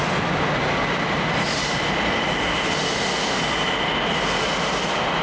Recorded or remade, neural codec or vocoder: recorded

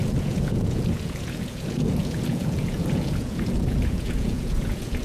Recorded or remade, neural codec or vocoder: remade, vocoder, Vocos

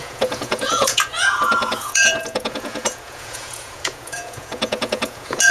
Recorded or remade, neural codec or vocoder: remade, vocoder, Vocos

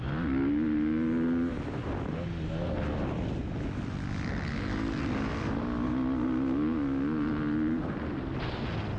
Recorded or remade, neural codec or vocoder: recorded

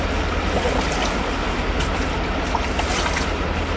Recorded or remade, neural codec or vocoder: recorded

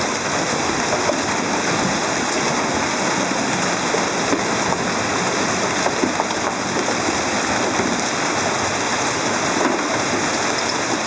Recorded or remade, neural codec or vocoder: recorded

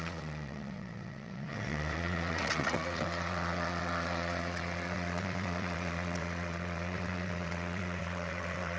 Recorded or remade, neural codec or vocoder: remade, vocoder, WaveNeXt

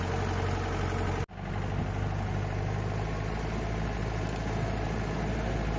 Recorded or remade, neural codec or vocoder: recorded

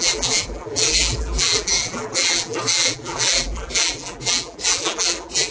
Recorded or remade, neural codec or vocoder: remade, vocoder, BigVGAN v2